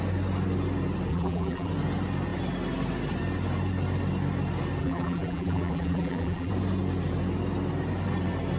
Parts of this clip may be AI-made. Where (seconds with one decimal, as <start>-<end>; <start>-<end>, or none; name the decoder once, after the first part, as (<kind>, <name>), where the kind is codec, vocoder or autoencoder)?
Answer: 1.1-1.7 (vocoder, BigVGAN v2); 4.8-6.5